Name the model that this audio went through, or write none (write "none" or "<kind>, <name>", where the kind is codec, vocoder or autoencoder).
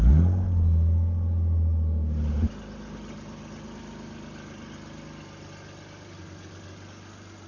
none